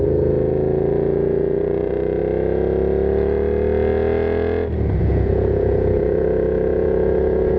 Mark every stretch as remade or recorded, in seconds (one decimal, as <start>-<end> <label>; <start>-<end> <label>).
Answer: 0.0-2.2 remade; 2.2-5.0 recorded; 5.0-7.6 remade